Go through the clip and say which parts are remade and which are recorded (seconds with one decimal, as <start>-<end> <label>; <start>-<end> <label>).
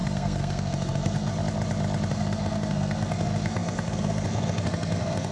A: 0.0-1.3 remade; 1.3-2.1 recorded; 2.1-5.3 remade